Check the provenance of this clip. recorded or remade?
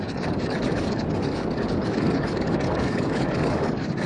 remade